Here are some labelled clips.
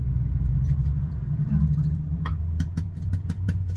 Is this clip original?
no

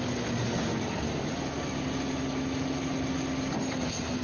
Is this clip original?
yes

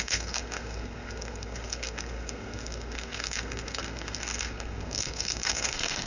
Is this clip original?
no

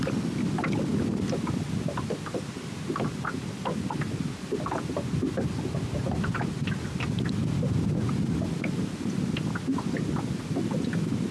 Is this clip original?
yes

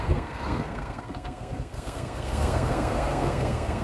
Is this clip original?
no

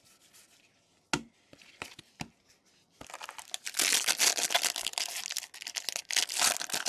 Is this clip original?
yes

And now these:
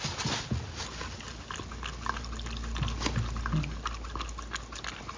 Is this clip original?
yes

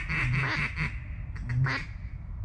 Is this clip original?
yes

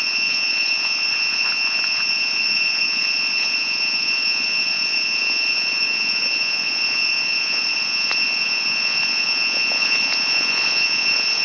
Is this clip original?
no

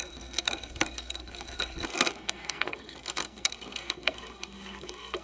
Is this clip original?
no